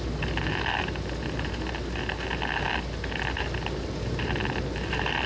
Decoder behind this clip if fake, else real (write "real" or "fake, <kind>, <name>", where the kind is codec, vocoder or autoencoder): real